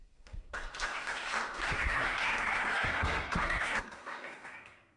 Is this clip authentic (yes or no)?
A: no